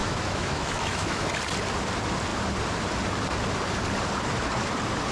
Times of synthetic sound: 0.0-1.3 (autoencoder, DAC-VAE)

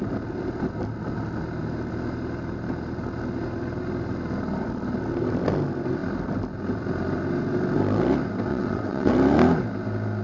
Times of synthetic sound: 8.5-9.1 (vocoder, WaveNeXt)

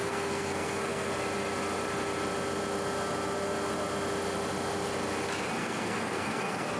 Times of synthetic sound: 0.0-1.1 (codec, SNAC); 5.6-6.8

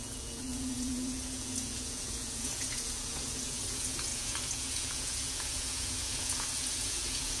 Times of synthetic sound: 0.0-7.4 (vocoder, Vocos)

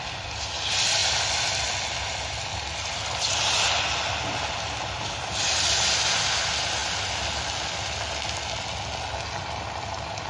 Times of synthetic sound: none

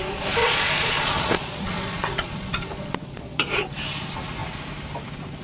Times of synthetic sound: 0.4-3.6 (vocoder, Vocos)

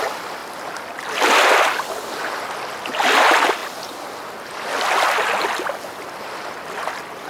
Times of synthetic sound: none

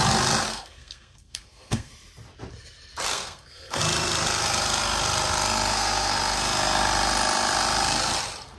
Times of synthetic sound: 0.5-1.9 (codec, SNAC); 3.1-3.8; 5.7-6.2